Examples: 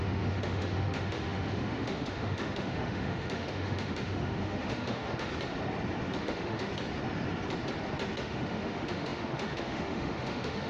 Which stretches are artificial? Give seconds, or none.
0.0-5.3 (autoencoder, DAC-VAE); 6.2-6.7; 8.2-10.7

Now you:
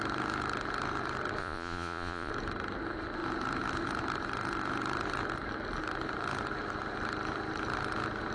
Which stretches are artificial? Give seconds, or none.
1.4-2.3 (vocoder, Vocos)

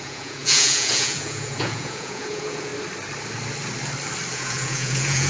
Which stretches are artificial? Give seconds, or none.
0.0-2.7 (vocoder, Vocos); 4.3-5.3

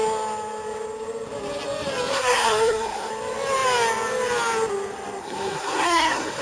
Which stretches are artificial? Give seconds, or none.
2.1-3.1 (codec, SNAC); 5.2-6.4